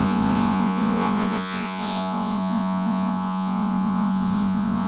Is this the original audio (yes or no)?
no